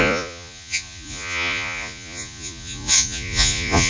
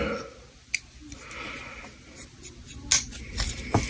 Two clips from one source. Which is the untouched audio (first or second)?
second